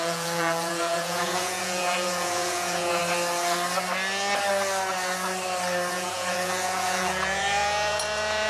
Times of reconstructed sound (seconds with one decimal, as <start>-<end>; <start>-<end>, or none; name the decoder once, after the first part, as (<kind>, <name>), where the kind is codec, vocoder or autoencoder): 0.0-3.0 (vocoder, Vocos); 5.9-8.5